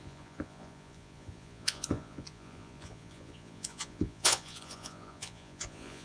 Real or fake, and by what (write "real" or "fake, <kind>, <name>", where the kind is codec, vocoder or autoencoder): fake, vocoder, Vocos